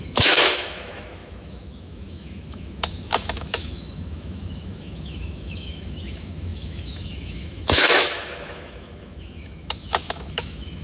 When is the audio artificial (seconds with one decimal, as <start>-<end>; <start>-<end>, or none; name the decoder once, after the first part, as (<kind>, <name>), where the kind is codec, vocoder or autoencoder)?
0.0-10.8 (autoencoder, DAC-VAE)